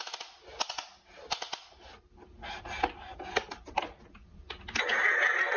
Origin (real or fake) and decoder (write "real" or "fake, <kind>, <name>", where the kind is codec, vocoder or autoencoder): real